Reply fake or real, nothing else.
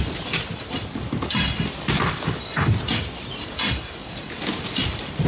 real